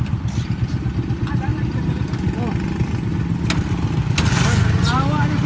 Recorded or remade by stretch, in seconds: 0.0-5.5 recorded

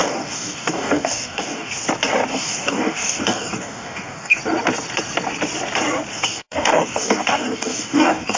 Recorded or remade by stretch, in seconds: 0.0-1.7 remade; 1.7-2.3 recorded; 2.3-4.4 remade; 4.4-6.1 recorded; 6.1-8.4 remade

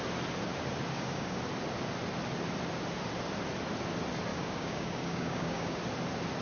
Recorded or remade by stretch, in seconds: 0.0-0.9 recorded; 0.9-1.4 remade; 1.4-4.3 recorded; 4.3-5.8 remade; 5.8-6.4 recorded

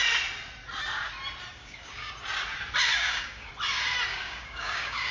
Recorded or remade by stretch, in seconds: 0.0-1.6 recorded; 1.6-2.1 remade; 2.1-2.9 recorded; 2.9-3.5 remade; 3.5-4.1 recorded; 4.1-5.1 remade

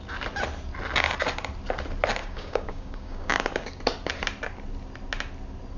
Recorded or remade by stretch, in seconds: 0.0-2.2 recorded; 2.2-3.8 remade; 3.8-5.8 recorded